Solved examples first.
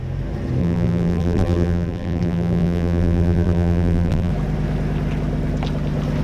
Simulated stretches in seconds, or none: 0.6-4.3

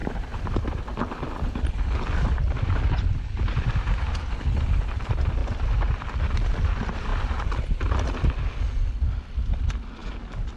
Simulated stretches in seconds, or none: 0.0-0.8